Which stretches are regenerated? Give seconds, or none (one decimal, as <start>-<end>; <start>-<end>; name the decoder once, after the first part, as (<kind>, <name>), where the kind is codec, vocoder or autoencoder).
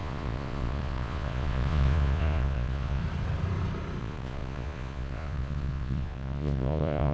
0.0-3.0 (vocoder, Vocos); 4.0-7.1